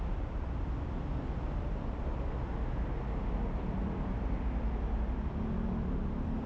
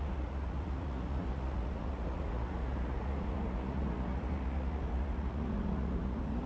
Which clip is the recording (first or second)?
first